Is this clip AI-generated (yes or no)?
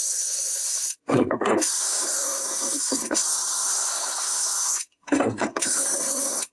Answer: yes